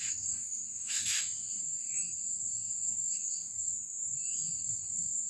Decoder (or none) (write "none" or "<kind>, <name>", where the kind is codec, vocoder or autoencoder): codec, DAC